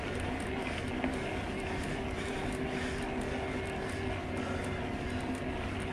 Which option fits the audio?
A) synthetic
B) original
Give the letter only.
B